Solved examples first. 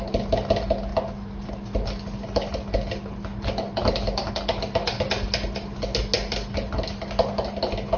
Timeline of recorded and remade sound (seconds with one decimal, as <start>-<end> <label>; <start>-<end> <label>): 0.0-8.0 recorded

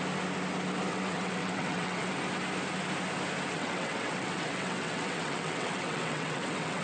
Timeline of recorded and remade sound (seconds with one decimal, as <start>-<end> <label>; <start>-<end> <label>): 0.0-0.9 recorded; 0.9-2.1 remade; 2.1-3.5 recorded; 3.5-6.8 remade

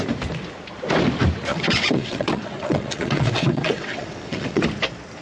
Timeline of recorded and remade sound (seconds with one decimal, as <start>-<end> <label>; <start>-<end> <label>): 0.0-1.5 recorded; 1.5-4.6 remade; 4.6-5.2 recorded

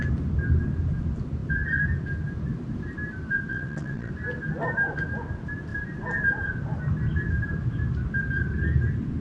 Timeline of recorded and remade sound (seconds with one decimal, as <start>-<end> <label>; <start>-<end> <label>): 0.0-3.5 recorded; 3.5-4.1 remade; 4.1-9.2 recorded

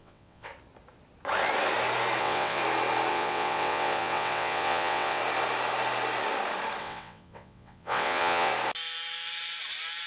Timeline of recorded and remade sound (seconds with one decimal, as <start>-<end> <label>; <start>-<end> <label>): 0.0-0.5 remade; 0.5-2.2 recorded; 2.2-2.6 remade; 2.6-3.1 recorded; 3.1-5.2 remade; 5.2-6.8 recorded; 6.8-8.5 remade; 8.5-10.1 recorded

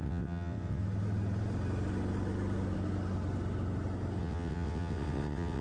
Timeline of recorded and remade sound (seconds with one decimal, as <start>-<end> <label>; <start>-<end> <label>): 0.0-0.8 remade; 0.8-4.2 recorded; 4.2-5.6 remade

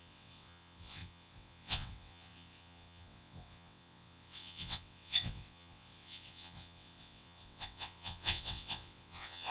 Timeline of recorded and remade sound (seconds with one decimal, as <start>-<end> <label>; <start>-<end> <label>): 0.0-9.5 remade

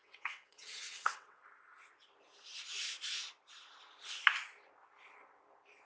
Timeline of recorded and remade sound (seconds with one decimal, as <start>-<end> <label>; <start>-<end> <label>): 0.0-1.4 remade; 1.4-5.9 recorded